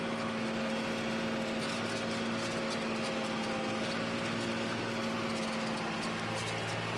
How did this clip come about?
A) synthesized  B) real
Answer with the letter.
B